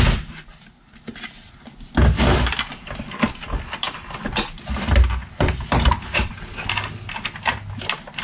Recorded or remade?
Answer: recorded